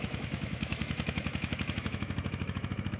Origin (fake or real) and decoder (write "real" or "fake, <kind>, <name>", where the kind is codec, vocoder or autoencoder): fake, autoencoder, DAC-VAE